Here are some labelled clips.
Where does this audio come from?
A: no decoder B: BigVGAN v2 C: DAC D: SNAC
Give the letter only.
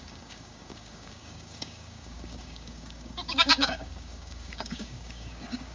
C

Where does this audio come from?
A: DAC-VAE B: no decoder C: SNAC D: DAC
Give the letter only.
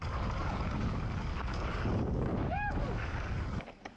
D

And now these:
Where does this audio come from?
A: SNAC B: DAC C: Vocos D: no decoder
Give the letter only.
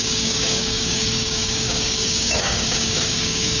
B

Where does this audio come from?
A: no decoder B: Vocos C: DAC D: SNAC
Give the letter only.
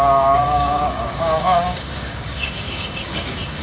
C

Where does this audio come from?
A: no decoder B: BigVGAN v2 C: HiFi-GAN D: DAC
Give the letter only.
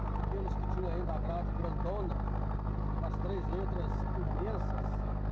A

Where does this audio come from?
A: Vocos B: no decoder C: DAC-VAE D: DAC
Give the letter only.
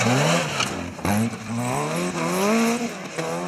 B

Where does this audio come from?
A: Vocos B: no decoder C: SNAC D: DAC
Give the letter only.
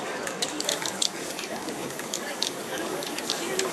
D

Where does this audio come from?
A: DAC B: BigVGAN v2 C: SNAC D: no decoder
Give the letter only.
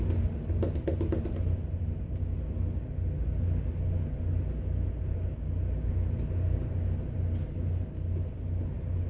D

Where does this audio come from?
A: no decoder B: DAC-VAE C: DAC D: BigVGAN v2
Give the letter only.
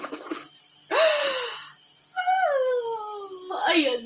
A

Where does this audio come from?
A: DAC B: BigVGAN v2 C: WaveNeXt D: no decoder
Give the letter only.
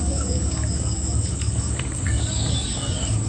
A